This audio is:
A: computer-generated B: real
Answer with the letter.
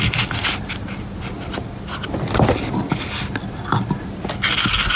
B